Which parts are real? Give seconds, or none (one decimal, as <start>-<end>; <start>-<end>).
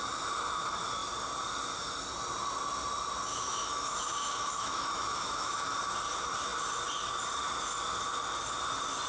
0.0-3.3; 5.8-9.1